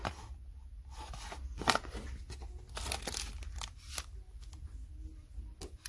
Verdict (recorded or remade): recorded